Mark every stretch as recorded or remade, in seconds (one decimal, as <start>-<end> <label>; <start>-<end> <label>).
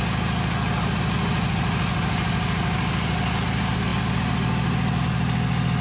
0.0-5.8 recorded